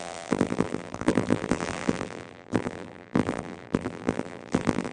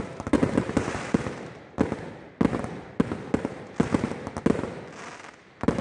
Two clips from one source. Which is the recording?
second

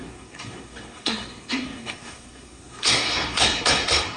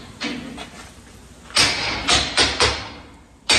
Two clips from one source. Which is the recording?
second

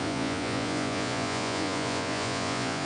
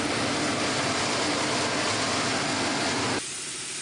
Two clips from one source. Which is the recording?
second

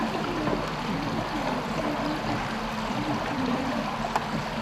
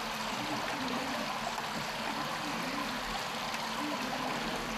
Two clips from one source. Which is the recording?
second